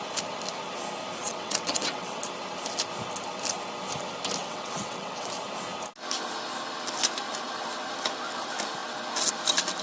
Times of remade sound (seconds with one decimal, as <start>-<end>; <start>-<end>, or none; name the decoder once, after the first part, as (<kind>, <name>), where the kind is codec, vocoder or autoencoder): 1.2-2.2 (vocoder, WaveNeXt); 4.4-5.3